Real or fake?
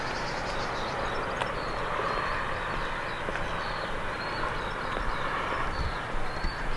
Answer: real